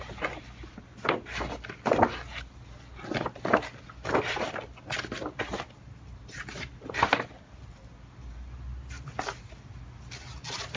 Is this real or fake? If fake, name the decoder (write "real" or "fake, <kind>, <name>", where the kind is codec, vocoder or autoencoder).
real